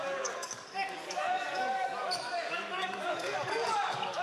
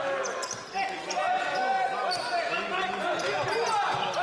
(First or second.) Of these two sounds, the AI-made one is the first